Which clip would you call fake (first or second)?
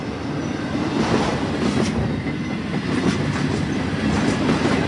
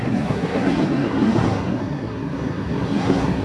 second